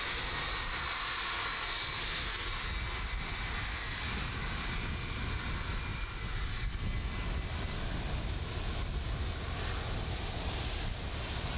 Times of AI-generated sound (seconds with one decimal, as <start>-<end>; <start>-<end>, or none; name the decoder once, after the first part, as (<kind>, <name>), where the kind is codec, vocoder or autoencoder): 5.9-6.8 (vocoder, BigVGAN v2)